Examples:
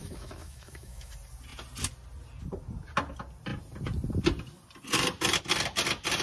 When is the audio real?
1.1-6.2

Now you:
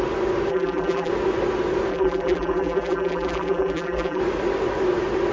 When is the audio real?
0.0-0.5; 1.1-1.9; 4.2-5.3

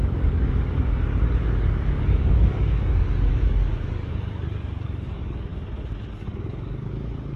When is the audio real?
5.5-6.1